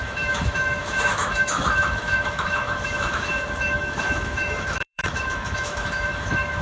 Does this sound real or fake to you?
fake